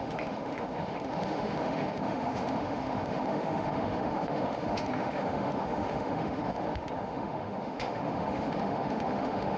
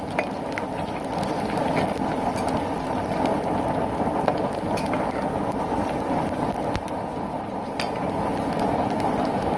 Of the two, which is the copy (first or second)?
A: first